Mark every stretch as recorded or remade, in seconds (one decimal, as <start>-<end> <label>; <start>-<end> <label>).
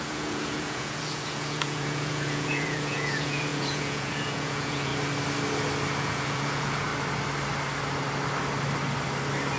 0.0-4.9 remade; 4.9-6.0 recorded; 6.0-6.9 remade; 6.9-9.6 recorded